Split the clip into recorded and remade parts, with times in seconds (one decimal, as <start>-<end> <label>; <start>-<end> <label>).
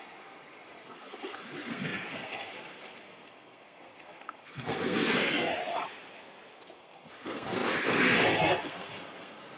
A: 0.0-5.5 remade; 5.5-6.8 recorded; 6.8-9.6 remade